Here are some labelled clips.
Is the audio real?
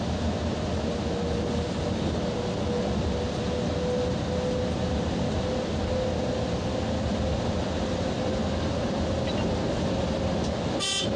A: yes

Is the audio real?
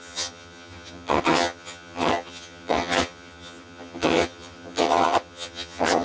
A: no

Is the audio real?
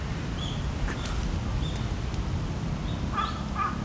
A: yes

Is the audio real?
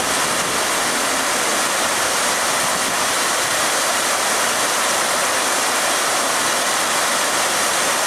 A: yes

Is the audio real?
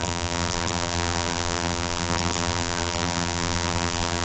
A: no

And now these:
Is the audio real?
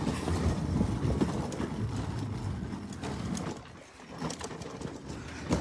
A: yes